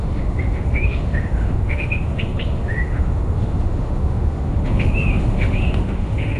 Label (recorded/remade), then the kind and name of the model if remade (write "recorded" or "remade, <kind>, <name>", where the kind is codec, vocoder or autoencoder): remade, autoencoder, DAC-VAE